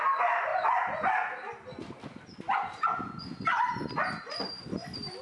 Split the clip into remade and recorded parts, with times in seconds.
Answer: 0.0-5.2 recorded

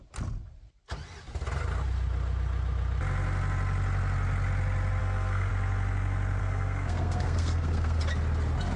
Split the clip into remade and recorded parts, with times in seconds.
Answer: 0.0-5.0 recorded; 5.0-5.5 remade; 5.5-6.4 recorded; 6.4-8.0 remade; 8.0-8.8 recorded

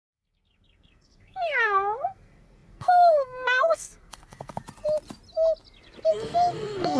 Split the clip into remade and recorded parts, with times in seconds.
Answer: 0.0-4.6 remade; 4.6-6.1 recorded; 6.1-7.0 remade

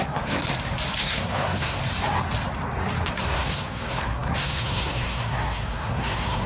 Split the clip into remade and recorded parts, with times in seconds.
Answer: 0.0-0.5 remade; 0.5-1.0 recorded; 1.0-1.8 remade; 1.8-3.1 recorded; 3.1-6.5 remade